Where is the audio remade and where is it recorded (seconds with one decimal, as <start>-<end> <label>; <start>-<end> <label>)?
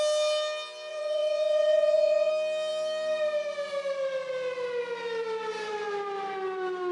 0.0-0.9 recorded; 0.9-2.3 remade; 2.3-6.9 recorded